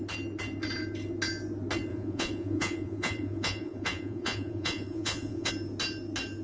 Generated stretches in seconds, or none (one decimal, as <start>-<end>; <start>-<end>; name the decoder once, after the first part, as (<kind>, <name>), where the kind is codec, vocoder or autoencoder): 1.9-5.5 (vocoder, Vocos)

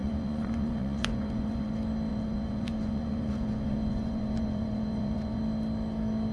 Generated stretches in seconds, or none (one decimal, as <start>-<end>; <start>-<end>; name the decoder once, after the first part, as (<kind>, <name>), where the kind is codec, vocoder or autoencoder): 0.0-1.7 (vocoder, Vocos); 2.1-5.4